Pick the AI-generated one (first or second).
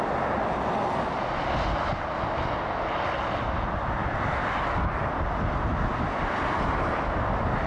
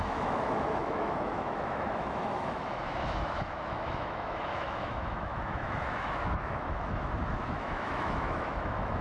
second